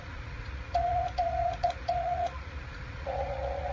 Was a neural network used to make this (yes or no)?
yes